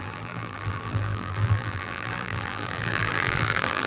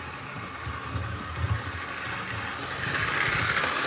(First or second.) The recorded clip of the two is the second